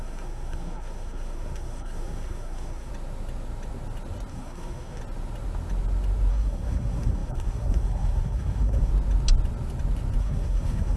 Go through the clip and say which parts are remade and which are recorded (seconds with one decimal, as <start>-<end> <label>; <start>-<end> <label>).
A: 0.0-2.9 remade; 2.9-4.3 recorded; 4.3-5.0 remade; 5.0-6.3 recorded; 6.3-8.9 remade; 8.9-10.2 recorded; 10.2-11.0 remade